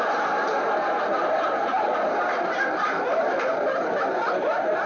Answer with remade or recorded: recorded